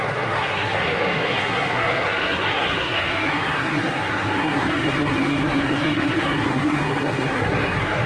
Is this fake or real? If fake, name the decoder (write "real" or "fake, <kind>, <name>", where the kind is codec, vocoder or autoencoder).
fake, codec, SNAC